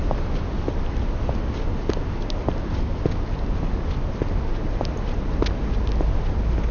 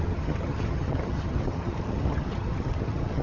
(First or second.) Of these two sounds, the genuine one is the first